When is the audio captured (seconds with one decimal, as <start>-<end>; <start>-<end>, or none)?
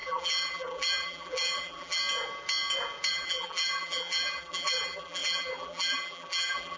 2.0-3.1